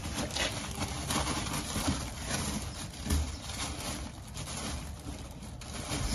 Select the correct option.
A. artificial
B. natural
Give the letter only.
B